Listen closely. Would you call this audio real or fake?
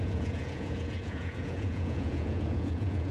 fake